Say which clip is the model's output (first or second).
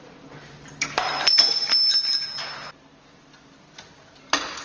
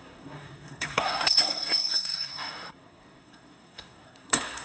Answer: second